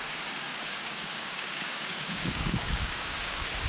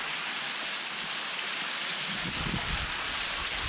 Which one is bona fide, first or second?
second